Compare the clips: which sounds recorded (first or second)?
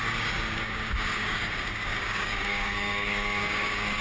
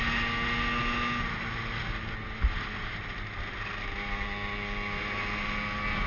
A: second